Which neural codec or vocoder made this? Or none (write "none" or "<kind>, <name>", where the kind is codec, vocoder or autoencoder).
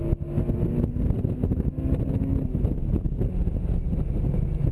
none